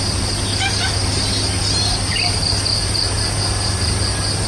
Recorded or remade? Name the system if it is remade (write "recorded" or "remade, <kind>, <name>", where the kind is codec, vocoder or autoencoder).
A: recorded